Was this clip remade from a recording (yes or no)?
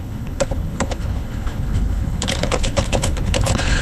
yes